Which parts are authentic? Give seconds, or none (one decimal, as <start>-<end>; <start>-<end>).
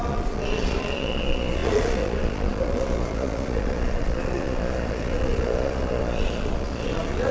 none